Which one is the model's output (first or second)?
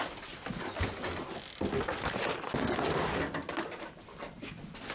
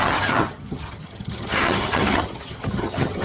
second